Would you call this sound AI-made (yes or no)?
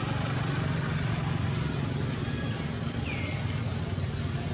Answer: no